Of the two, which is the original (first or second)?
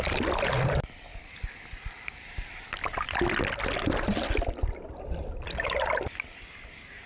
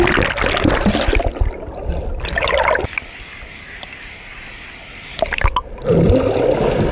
second